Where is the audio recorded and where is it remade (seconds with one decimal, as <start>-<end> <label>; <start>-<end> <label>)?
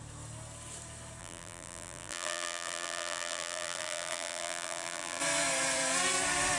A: 0.0-1.2 recorded; 1.2-5.2 remade; 5.2-6.6 recorded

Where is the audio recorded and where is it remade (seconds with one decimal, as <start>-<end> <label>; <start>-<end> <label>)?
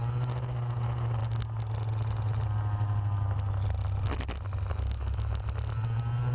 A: 0.0-6.3 recorded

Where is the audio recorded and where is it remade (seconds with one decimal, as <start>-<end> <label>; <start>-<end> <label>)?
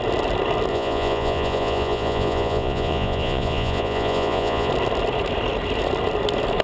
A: 0.0-0.7 recorded; 0.7-4.7 remade; 4.7-6.6 recorded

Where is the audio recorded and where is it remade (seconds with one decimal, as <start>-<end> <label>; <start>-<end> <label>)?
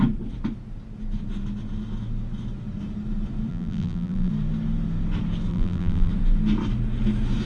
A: 0.0-3.5 recorded; 3.5-4.3 remade; 4.3-5.5 recorded; 5.5-6.1 remade; 6.1-7.5 recorded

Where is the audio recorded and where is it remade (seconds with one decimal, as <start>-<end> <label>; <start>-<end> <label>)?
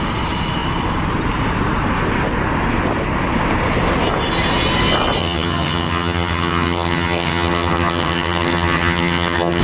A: 0.0-5.2 recorded; 5.2-9.6 remade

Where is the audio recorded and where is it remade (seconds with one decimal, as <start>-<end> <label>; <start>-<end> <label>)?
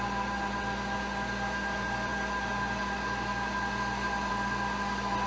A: 0.0-5.3 recorded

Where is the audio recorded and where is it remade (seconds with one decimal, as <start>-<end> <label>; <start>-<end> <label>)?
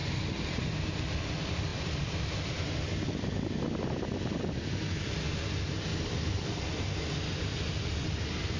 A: 0.0-0.5 remade; 0.5-1.7 recorded; 1.7-2.6 remade; 2.6-5.9 recorded; 5.9-6.6 remade; 6.6-8.6 recorded